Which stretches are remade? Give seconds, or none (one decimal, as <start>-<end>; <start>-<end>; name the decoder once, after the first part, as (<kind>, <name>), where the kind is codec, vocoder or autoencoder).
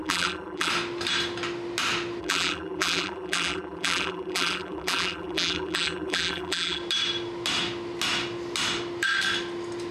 0.0-0.7 (vocoder, BigVGAN v2); 2.2-6.8